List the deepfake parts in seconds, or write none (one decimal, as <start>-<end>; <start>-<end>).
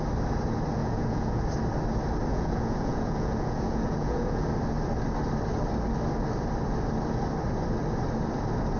0.8-1.4; 2.3-4.4